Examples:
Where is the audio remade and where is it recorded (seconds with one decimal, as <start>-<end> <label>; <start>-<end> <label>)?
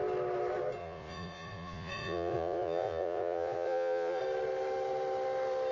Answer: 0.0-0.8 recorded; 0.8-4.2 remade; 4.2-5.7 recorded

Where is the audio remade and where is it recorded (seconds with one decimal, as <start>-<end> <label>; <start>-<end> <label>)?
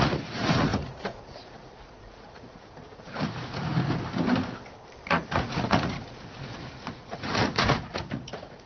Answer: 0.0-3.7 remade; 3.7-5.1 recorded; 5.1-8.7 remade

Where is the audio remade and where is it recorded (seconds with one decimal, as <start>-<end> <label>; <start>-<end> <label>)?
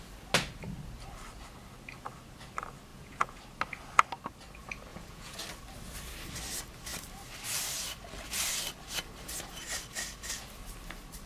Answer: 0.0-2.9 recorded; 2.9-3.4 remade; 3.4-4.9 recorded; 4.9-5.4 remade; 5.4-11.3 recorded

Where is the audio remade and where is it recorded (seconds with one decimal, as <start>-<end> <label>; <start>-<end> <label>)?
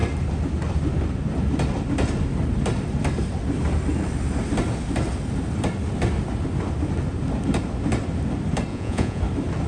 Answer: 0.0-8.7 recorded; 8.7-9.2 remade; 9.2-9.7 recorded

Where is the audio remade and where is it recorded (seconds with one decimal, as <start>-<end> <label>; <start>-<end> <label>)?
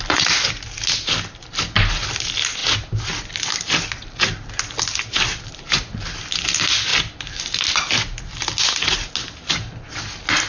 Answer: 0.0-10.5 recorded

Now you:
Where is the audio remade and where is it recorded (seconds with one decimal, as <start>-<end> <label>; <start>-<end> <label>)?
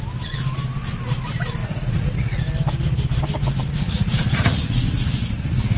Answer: 0.0-1.6 recorded; 1.6-2.4 remade; 2.4-3.4 recorded; 3.4-5.8 remade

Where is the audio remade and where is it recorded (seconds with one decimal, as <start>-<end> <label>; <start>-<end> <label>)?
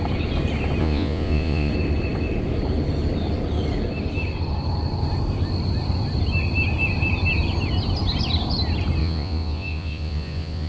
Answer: 0.0-0.8 recorded; 0.8-1.7 remade; 1.7-9.0 recorded; 9.0-10.7 remade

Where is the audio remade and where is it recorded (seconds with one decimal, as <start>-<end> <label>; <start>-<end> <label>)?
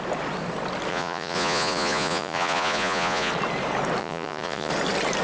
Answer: 0.0-0.9 recorded; 0.9-3.3 remade; 3.3-4.0 recorded; 4.0-4.7 remade; 4.7-5.2 recorded